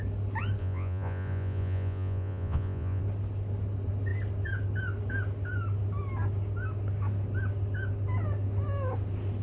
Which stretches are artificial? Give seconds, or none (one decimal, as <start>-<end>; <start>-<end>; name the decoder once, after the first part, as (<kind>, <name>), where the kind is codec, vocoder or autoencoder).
0.6-3.0 (vocoder, Vocos)